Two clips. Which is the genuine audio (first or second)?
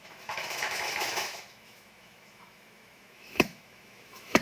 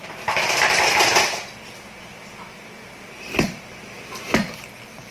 second